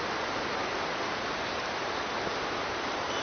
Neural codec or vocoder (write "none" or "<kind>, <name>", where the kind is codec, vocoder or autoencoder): none